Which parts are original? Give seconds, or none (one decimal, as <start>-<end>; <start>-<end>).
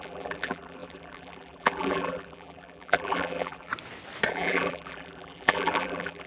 3.7-4.3